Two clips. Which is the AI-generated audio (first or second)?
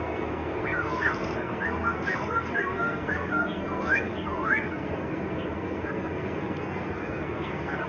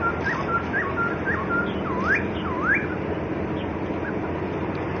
first